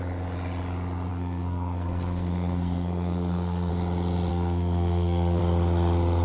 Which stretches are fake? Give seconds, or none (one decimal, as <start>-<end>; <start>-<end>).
1.1-3.7; 4.3-5.4